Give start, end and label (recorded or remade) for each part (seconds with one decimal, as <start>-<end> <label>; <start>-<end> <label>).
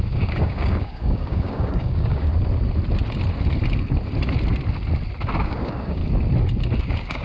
0.0-2.3 remade; 2.3-5.4 recorded; 5.4-6.0 remade; 6.0-6.8 recorded; 6.8-7.2 remade